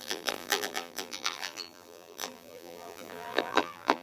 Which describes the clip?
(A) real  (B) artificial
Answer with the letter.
B